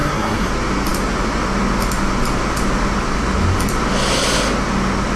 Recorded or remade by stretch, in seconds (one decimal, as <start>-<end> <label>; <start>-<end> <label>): 0.0-0.5 remade; 0.5-5.2 recorded